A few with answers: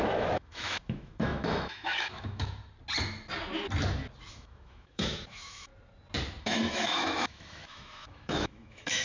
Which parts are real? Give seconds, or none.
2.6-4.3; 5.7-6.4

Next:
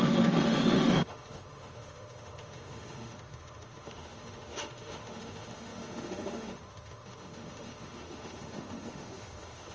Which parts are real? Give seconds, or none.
none

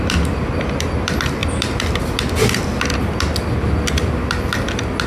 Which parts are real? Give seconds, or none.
0.0-5.1

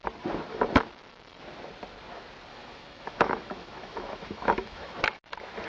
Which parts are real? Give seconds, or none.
0.0-0.5; 1.4-2.5; 5.0-5.7